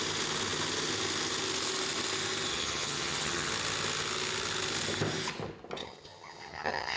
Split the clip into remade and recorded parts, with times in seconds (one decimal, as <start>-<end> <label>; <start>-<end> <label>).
0.0-2.5 recorded; 2.5-3.5 remade; 3.5-5.8 recorded; 5.8-7.0 remade